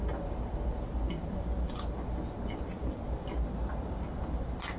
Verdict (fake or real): real